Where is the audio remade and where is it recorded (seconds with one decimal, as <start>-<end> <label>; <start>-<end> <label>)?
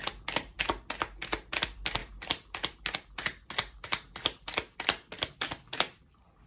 0.0-6.5 recorded